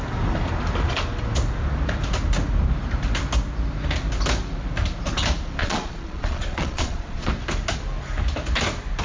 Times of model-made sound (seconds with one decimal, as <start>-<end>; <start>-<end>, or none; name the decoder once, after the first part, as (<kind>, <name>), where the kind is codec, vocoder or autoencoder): 5.6-7.3 (vocoder, Vocos)